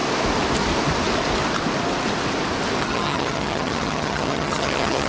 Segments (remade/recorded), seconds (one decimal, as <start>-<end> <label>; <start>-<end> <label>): 0.0-2.8 recorded; 2.8-5.1 remade

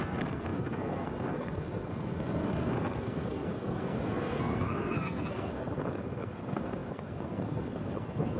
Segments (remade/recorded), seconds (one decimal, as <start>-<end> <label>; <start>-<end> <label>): 0.0-8.4 remade

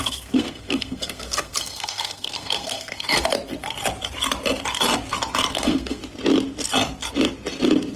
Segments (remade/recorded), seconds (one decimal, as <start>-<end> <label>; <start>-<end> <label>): 0.0-2.9 remade; 2.9-5.5 recorded; 5.5-6.0 remade; 6.0-8.0 recorded

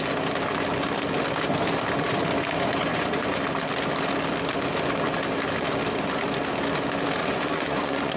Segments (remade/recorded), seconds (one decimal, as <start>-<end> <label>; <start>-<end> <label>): 0.0-2.9 recorded; 2.9-3.4 remade; 3.4-7.2 recorded; 7.2-8.2 remade

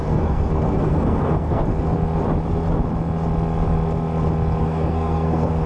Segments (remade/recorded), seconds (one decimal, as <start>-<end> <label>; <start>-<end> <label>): 0.0-1.6 remade; 1.6-4.6 recorded; 4.6-5.7 remade

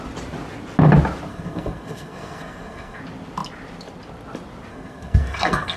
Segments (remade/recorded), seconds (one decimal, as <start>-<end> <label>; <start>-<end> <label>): 0.0-1.3 recorded; 1.3-3.0 remade; 3.0-4.7 recorded; 4.7-5.8 remade